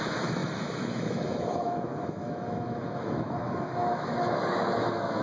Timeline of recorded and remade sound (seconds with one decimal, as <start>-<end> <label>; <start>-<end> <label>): 0.0-5.2 remade